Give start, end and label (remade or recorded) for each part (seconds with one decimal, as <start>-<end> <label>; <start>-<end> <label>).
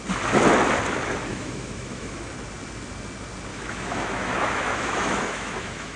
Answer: 0.0-1.3 recorded; 1.3-2.3 remade; 2.3-3.5 recorded; 3.5-6.0 remade